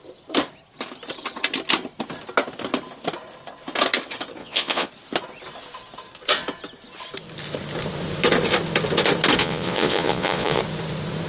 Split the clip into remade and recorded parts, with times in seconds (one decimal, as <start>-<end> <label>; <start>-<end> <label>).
0.0-4.4 recorded; 4.4-4.9 remade; 4.9-9.4 recorded; 9.4-10.6 remade; 10.6-11.3 recorded